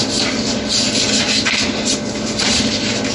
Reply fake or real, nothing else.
real